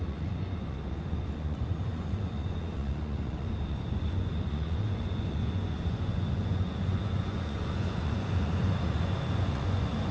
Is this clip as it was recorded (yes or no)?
no